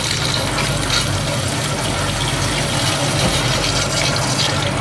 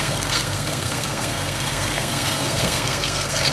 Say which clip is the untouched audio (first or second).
first